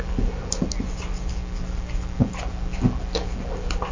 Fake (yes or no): no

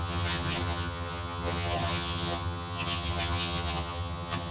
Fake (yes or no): yes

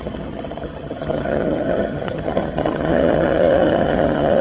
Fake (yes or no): yes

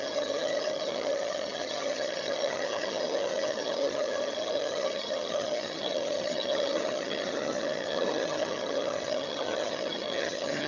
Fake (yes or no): yes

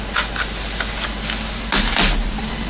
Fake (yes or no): no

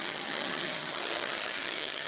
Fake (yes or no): yes